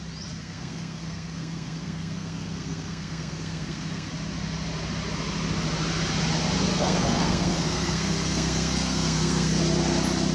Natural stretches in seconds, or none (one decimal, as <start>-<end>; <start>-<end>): 0.0-0.4; 4.1-6.7; 9.6-10.3